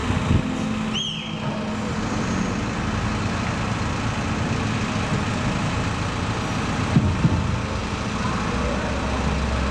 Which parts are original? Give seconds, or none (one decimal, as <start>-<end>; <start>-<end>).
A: 0.0-9.7